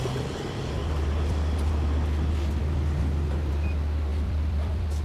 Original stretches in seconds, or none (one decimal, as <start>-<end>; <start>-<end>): 0.0-4.1